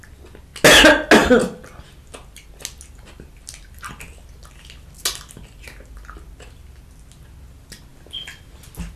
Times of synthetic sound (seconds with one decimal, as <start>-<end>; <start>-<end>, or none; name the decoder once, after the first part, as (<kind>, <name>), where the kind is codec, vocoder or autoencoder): none